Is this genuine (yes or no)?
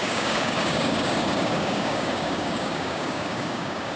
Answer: no